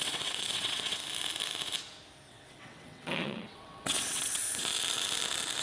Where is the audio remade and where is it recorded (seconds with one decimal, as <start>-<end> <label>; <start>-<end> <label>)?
0.0-1.0 remade; 1.0-2.3 recorded; 2.3-4.4 remade; 4.4-5.6 recorded